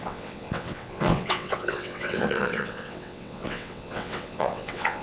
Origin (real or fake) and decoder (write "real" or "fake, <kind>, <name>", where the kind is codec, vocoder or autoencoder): fake, vocoder, WaveNeXt